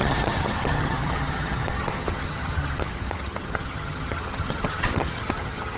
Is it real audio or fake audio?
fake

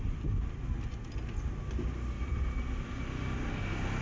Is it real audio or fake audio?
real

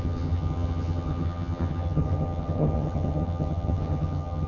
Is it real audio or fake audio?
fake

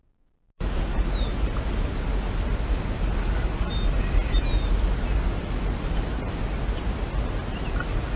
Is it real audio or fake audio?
real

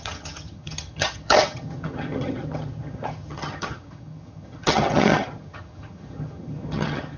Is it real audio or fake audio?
fake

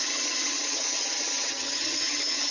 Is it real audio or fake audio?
fake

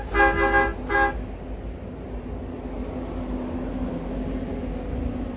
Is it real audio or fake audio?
real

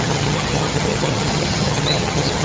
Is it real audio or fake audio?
fake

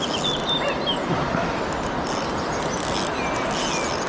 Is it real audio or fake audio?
real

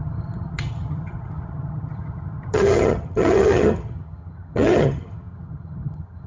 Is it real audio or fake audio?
fake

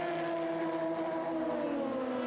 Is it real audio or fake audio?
real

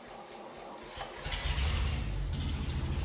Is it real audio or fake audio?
real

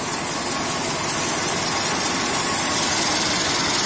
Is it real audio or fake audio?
real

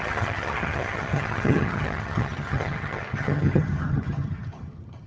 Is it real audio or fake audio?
fake